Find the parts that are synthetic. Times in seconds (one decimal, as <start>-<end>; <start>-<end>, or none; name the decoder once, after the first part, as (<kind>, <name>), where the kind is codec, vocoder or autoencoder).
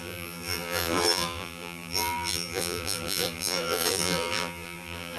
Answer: 0.0-5.2 (vocoder, BigVGAN v2)